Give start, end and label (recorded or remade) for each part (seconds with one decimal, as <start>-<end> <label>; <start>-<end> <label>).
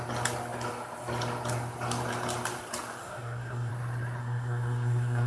0.0-3.0 recorded; 3.0-3.7 remade; 3.7-4.2 recorded; 4.2-5.3 remade